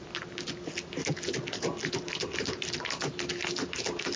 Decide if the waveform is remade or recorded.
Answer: recorded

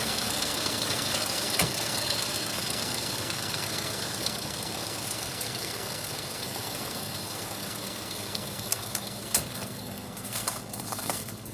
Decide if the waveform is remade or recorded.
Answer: remade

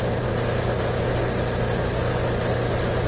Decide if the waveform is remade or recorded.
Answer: recorded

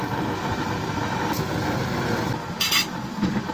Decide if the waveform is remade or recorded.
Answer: recorded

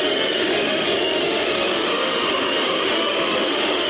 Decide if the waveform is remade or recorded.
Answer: remade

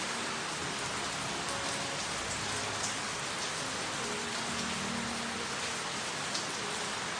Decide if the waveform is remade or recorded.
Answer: recorded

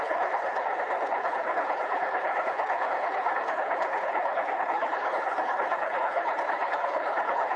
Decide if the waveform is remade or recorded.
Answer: remade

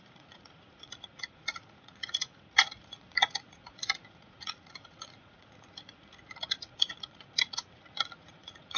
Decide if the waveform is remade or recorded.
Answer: remade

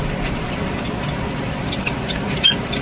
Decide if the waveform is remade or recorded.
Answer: remade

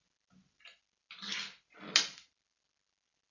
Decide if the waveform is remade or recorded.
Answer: recorded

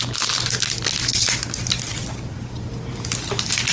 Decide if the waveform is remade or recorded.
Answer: recorded